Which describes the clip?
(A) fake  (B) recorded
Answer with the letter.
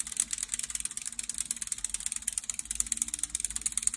B